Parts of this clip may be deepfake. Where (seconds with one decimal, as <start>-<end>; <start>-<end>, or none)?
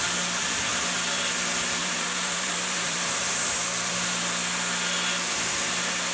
1.8-3.9